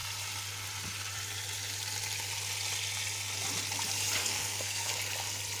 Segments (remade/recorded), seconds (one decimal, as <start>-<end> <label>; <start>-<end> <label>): 0.0-4.2 recorded; 4.2-4.9 remade; 4.9-5.6 recorded